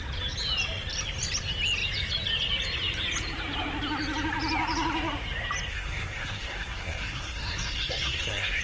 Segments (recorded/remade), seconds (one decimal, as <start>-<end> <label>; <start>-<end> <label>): 0.0-5.7 recorded; 5.7-8.6 remade